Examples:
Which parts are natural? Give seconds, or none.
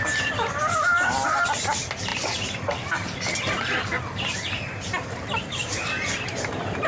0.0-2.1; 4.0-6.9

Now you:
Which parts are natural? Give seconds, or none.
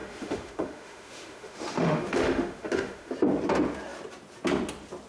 3.1-5.1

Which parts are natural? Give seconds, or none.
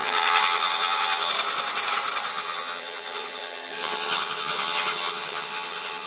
1.3-2.3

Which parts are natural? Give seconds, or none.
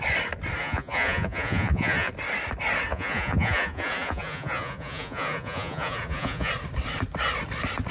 0.0-0.6; 2.1-2.9; 6.5-7.9